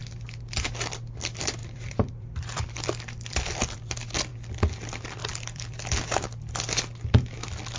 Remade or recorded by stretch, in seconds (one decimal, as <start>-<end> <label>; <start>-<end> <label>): 0.0-1.6 recorded; 1.6-3.9 remade; 3.9-5.2 recorded; 5.2-6.6 remade; 6.6-7.8 recorded